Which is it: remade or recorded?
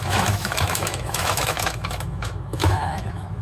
remade